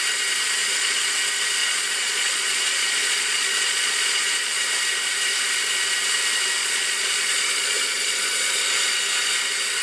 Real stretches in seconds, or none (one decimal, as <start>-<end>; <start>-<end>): 0.0-0.6; 1.1-1.6; 4.6-6.6; 8.6-9.8

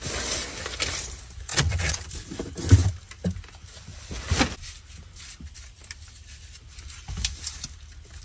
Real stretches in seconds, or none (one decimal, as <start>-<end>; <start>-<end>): 0.0-1.5; 2.1-8.2

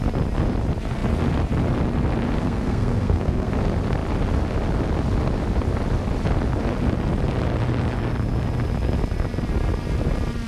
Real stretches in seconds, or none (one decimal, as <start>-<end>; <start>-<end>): 0.0-2.4; 3.5-10.5

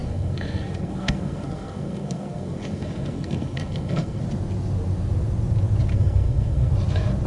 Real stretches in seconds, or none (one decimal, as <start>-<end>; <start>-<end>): 4.2-5.9; 6.7-7.3

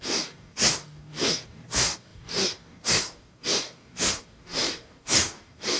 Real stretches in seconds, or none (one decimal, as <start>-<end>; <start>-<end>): none

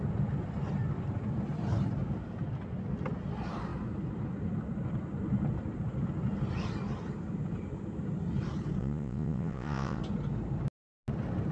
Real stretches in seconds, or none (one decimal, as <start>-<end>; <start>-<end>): 0.0-8.8; 10.0-11.5

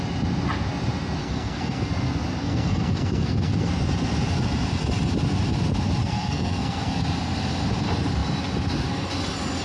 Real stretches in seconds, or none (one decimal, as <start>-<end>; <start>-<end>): 0.0-1.2; 1.9-2.4; 3.7-6.0; 7.0-9.6

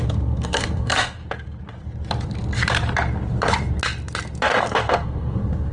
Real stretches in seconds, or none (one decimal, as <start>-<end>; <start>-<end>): 1.2-4.6